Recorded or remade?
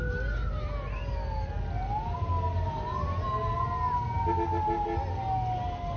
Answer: recorded